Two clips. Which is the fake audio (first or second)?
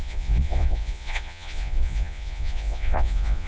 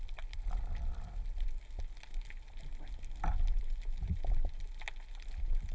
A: first